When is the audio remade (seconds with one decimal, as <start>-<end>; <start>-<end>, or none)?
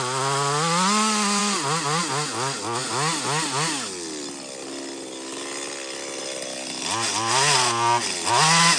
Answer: none